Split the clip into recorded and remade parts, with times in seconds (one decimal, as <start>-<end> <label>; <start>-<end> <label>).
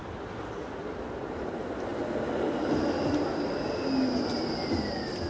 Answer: 0.0-5.3 recorded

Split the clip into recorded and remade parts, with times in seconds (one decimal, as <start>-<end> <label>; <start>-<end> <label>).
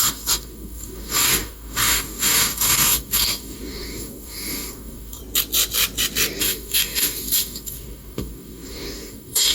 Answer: 0.0-5.2 remade; 5.2-6.4 recorded; 6.4-9.5 remade